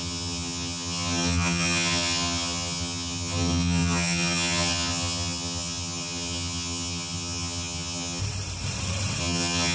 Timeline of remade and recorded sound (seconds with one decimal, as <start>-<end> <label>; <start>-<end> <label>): 0.0-8.2 remade; 8.2-9.2 recorded; 9.2-9.7 remade